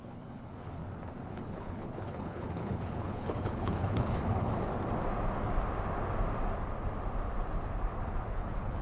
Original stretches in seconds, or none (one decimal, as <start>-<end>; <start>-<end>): 0.8-1.3; 4.7-8.3